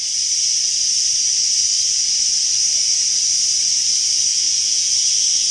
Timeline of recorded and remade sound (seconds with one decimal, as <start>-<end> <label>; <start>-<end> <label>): 0.0-4.3 recorded; 4.3-4.9 remade; 4.9-5.5 recorded